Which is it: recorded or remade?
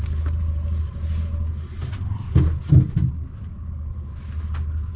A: recorded